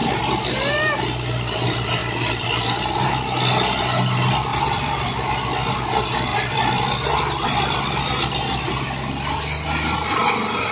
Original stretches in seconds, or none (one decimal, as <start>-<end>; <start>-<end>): 0.0-2.0; 2.6-4.5; 5.1-6.3; 8.3-10.7